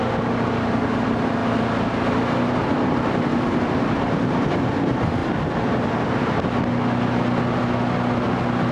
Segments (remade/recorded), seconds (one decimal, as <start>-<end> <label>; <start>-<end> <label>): 0.0-8.7 recorded